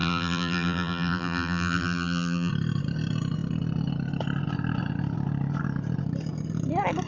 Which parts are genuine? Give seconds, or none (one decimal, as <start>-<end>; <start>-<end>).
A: 2.5-7.1